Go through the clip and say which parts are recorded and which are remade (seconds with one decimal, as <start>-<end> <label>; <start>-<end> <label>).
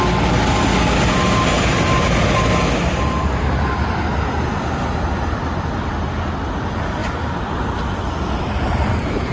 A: 0.0-9.3 recorded